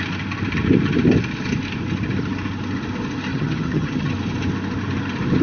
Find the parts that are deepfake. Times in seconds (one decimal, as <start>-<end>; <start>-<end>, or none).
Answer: 3.3-4.1

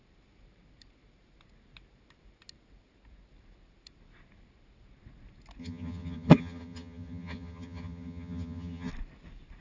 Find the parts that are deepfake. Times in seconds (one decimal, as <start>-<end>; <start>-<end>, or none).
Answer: 5.6-8.9

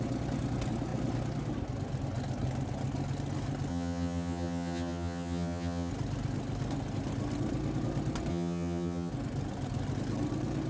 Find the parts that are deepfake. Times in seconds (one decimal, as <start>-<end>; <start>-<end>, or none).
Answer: 3.7-5.9; 8.3-9.1